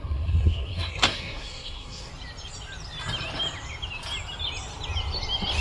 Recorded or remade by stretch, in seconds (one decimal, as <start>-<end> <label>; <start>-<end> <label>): 0.0-2.1 remade; 2.1-5.6 recorded